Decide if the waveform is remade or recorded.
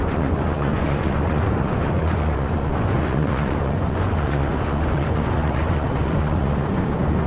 remade